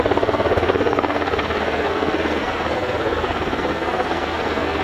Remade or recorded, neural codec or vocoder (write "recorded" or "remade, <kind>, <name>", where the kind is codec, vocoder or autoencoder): remade, codec, SNAC